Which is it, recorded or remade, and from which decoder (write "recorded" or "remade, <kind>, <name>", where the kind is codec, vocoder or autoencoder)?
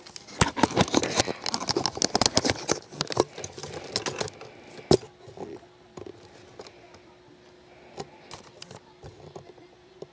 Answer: recorded